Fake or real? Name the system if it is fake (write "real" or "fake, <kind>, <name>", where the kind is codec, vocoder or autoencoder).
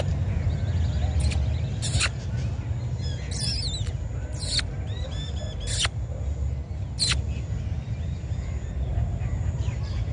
real